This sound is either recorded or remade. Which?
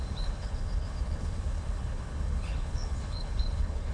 remade